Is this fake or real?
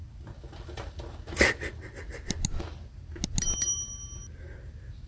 real